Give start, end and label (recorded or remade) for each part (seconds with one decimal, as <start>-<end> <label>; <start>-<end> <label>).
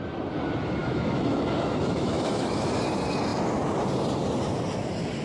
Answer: 0.0-0.8 recorded; 0.8-2.7 remade; 2.7-5.2 recorded